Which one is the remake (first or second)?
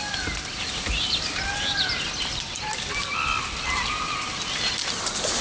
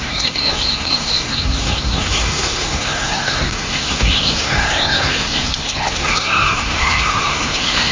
second